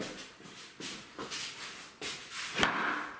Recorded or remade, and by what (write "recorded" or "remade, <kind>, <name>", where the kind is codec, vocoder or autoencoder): recorded